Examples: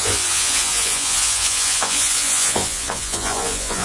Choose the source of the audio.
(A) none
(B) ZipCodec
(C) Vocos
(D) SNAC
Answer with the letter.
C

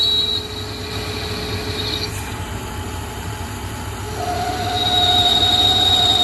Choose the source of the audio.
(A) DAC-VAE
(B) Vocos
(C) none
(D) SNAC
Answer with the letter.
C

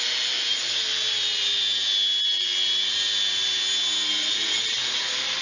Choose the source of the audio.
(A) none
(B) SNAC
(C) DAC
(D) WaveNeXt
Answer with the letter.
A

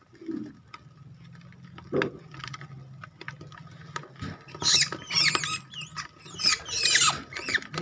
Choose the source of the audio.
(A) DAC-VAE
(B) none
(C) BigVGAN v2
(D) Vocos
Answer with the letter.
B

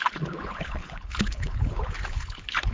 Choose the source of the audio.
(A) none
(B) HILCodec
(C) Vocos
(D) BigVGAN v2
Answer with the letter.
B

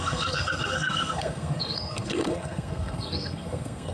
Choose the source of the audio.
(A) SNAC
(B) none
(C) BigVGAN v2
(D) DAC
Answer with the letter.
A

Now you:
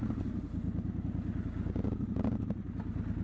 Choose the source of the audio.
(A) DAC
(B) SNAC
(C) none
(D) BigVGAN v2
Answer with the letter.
C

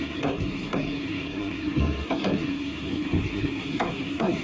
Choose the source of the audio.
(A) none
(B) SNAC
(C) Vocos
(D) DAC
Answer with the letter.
B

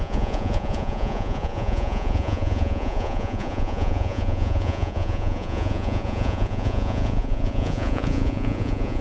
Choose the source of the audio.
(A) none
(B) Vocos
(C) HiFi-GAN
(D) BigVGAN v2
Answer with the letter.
B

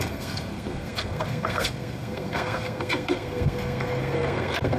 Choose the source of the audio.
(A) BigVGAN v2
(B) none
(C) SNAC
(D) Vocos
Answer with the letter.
C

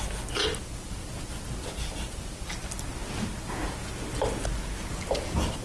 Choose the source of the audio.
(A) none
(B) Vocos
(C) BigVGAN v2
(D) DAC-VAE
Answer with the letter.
A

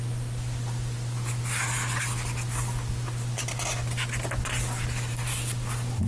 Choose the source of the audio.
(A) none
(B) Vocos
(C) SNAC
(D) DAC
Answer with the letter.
A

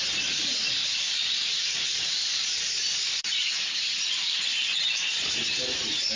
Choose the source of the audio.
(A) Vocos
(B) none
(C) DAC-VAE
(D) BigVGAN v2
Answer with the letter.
D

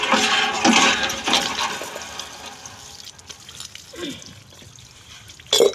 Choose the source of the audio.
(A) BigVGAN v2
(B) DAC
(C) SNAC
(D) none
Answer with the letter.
D